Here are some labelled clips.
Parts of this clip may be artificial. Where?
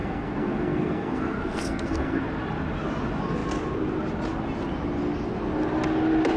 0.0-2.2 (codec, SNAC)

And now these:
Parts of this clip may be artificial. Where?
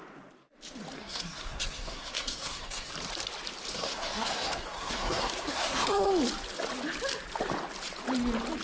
1.0-2.9 (codec, SNAC); 3.7-6.1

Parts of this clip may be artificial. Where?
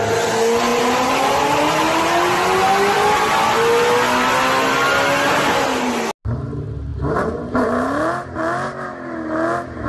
none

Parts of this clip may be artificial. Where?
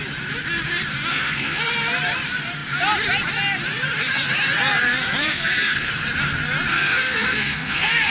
1.1-1.7 (codec, SNAC); 5.2-5.9; 6.7-8.1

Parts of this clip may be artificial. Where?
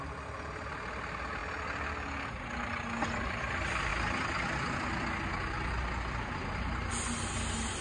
none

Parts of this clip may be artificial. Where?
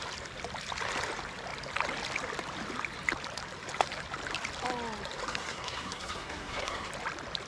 5.3-6.9 (codec, SNAC)